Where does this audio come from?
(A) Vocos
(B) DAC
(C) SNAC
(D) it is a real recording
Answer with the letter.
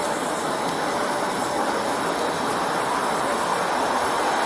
D